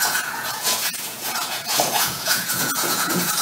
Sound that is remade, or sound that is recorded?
remade